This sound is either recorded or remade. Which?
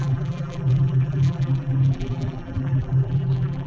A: remade